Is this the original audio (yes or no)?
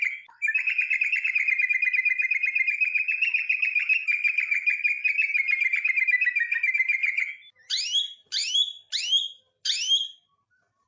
yes